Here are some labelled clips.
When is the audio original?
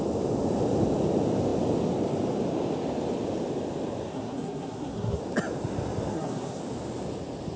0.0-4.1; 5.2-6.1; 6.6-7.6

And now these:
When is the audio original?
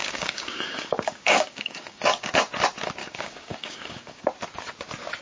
2.3-3.0; 4.2-5.2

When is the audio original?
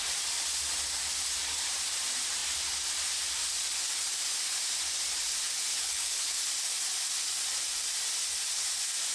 0.0-5.7; 6.4-9.1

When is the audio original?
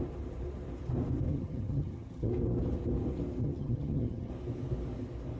0.0-1.3; 2.3-3.4; 4.3-5.4